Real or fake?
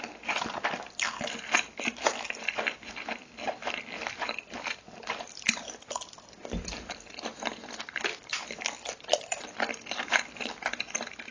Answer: fake